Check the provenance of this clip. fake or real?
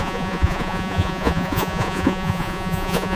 fake